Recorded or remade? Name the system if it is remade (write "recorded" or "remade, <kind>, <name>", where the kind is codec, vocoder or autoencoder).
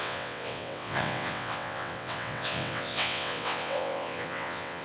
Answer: remade, vocoder, WaveNeXt